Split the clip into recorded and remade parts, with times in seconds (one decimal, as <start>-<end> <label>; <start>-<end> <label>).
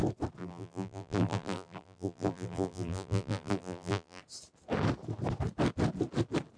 0.0-0.4 recorded; 0.4-4.2 remade; 4.2-6.6 recorded